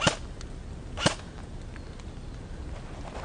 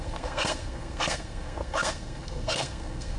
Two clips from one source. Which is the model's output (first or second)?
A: second